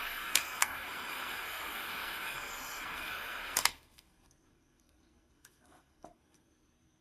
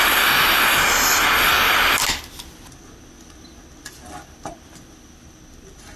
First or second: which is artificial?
first